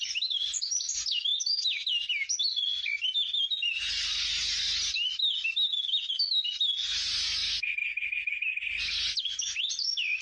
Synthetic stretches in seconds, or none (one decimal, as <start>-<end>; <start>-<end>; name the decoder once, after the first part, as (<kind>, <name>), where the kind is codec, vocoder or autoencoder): none